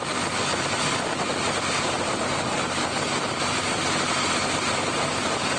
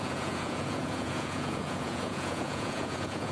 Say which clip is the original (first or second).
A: first